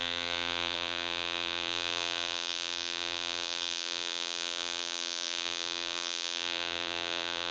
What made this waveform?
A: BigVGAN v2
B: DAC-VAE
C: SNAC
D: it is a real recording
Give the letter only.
A